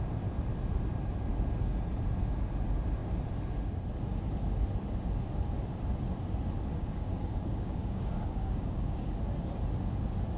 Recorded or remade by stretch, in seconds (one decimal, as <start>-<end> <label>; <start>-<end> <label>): 0.0-6.7 recorded; 6.7-9.1 remade; 9.1-10.4 recorded